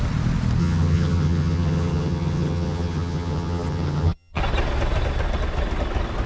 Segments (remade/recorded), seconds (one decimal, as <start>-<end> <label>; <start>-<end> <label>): 0.0-0.6 recorded; 0.6-4.4 remade; 4.4-6.3 recorded